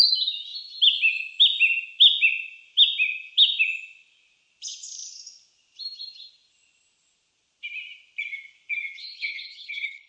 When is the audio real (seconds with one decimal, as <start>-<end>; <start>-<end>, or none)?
0.0-9.0